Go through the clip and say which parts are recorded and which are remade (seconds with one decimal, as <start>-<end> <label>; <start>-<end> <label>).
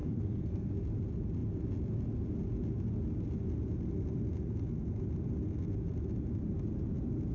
0.0-0.7 remade; 0.7-7.3 recorded